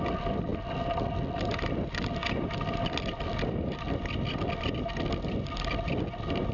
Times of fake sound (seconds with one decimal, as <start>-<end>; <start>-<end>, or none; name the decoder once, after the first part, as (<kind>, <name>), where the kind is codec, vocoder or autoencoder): none